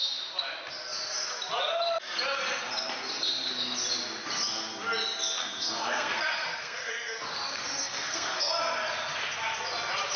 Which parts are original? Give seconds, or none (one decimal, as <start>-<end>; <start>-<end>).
0.0-5.4; 6.9-7.8; 8.5-10.2